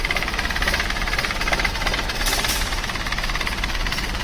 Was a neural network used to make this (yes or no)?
no